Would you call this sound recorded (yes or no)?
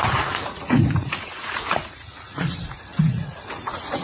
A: no